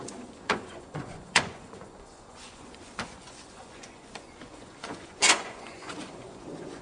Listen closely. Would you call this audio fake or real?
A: fake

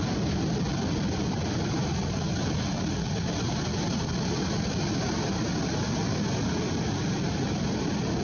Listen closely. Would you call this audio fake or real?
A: real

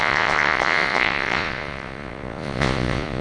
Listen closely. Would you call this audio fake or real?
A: fake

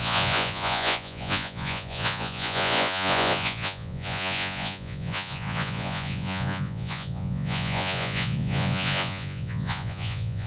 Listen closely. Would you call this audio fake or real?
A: fake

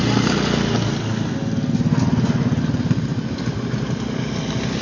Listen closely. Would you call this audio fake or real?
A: real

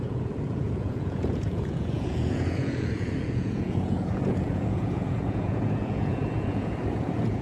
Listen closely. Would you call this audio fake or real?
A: fake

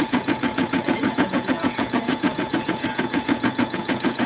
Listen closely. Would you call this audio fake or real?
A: fake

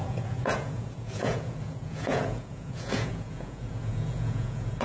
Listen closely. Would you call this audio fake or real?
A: fake